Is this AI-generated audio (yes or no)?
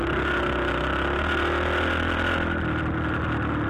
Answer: no